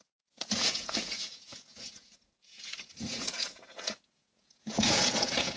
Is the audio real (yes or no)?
no